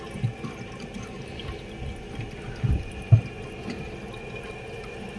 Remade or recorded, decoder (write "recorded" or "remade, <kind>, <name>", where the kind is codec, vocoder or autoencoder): recorded